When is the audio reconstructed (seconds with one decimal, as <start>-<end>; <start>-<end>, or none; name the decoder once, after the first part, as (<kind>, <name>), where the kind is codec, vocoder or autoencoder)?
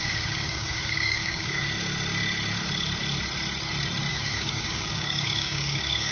0.0-1.6 (codec, DAC); 4.1-6.1